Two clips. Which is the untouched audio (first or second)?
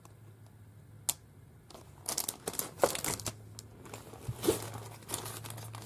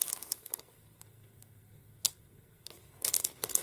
first